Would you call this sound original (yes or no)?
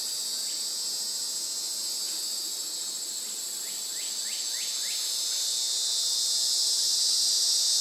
yes